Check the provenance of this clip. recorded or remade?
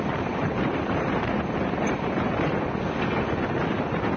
recorded